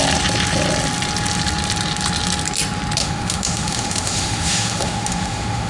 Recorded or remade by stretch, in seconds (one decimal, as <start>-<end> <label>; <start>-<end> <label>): 0.0-3.0 recorded; 3.0-5.7 remade